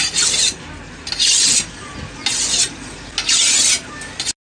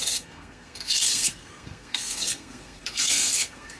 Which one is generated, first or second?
second